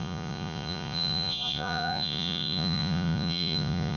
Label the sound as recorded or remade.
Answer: remade